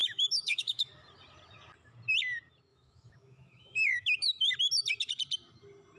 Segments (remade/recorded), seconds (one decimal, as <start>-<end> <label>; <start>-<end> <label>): 0.0-0.9 remade; 0.9-2.7 recorded; 2.7-4.5 remade; 4.5-6.0 recorded

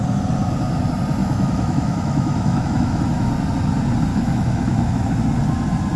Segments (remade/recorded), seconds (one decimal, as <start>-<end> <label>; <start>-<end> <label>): 0.0-1.2 recorded; 1.2-3.3 remade; 3.3-4.1 recorded; 4.1-5.2 remade; 5.2-6.0 recorded

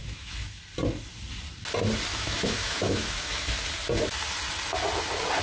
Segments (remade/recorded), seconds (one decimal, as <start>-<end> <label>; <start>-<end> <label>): 0.0-0.6 remade; 0.6-2.1 recorded; 2.1-3.5 remade; 3.5-5.4 recorded

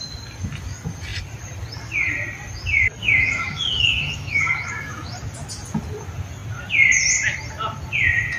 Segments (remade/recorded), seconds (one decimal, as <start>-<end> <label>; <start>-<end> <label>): 0.0-3.0 recorded; 3.0-5.1 remade; 5.1-8.4 recorded

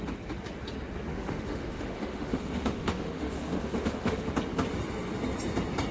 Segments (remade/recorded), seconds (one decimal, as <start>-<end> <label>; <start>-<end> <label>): 0.0-1.1 recorded; 1.1-4.3 remade; 4.3-5.9 recorded